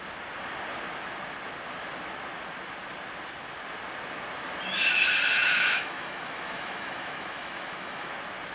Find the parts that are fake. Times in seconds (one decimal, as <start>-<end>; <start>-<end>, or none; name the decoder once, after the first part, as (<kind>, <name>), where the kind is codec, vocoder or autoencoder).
5.4-8.1 (autoencoder, DAC-VAE)

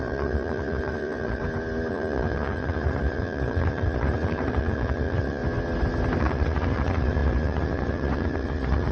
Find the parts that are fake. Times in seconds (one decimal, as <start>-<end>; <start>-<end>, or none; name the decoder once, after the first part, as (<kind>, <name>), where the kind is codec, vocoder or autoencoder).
0.0-1.4 (vocoder, Vocos); 1.9-5.4; 6.2-8.9

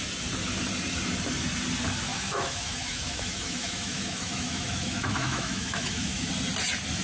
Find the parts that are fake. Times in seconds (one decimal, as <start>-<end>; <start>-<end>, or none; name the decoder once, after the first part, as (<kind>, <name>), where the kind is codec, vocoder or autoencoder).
2.1-6.3 (autoencoder, DAC-VAE)

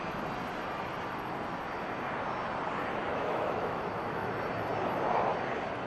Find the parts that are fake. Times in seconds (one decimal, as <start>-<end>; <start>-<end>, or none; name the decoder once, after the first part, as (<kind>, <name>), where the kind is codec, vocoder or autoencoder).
3.1-4.3 (autoencoder, DAC-VAE)

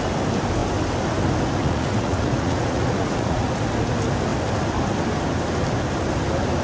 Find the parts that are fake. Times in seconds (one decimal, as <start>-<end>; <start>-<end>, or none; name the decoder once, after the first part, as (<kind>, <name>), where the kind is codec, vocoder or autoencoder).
1.6-3.5 (vocoder, Vocos)

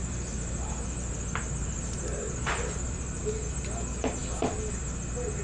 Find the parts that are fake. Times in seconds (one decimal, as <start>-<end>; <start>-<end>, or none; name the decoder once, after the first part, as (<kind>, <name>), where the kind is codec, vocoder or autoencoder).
0.0-3.2 (vocoder, BigVGAN v2)